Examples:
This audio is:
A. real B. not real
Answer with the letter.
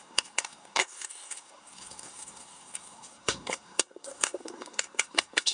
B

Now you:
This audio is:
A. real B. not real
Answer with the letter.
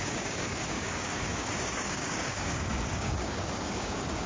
B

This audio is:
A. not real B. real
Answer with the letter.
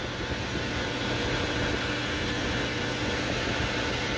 B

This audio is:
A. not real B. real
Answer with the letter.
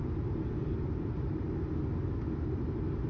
B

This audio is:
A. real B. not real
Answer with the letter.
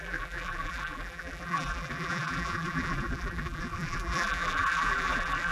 B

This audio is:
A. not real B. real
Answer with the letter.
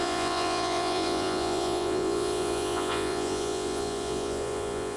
A